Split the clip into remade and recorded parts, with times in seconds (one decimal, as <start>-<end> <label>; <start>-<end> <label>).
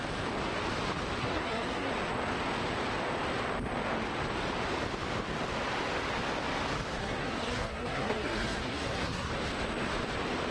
0.0-1.2 recorded; 1.2-1.9 remade; 1.9-7.0 recorded; 7.0-9.3 remade; 9.3-10.5 recorded